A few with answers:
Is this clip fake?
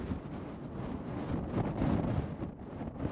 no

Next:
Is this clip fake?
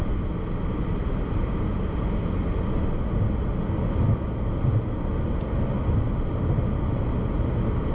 no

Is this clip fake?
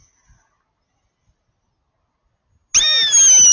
no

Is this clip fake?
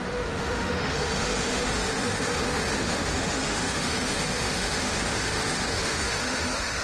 yes